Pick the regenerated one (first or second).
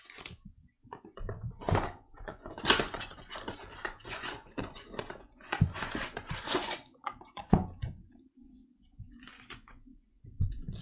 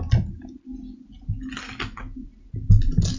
first